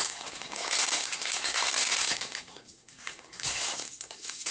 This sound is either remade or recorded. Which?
remade